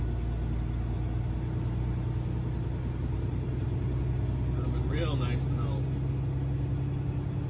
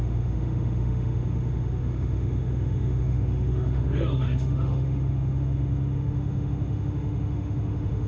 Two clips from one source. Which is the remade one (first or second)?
second